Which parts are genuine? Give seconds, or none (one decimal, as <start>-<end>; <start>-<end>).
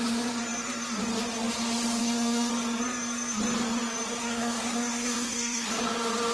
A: 0.0-2.0; 2.5-4.2; 5.7-6.3